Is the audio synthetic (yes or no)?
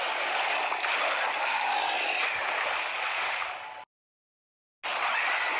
no